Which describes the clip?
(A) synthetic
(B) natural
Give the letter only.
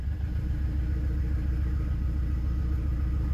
B